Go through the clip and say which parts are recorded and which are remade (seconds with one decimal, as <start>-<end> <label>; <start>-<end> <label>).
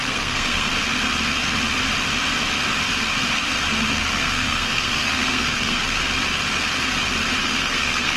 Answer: 0.0-0.7 remade; 0.7-3.9 recorded; 3.9-6.0 remade; 6.0-7.4 recorded; 7.4-8.2 remade